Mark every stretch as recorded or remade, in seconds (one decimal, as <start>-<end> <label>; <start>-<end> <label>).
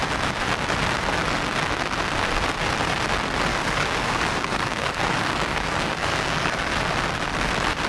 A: 0.0-3.5 recorded; 3.5-6.7 remade; 6.7-7.9 recorded